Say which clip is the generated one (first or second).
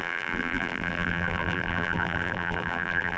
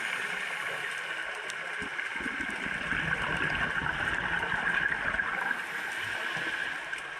first